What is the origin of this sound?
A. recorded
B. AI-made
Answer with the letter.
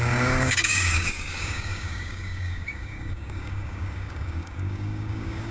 B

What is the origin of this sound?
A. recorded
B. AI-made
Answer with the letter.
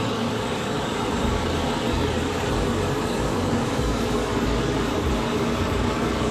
B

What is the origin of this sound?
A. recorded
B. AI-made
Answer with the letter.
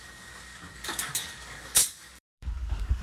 B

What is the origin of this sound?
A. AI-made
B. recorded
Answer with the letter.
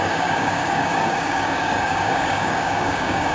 A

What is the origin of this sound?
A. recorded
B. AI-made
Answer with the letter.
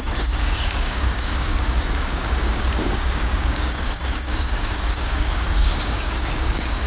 B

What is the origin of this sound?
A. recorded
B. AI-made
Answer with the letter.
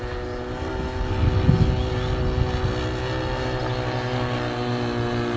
A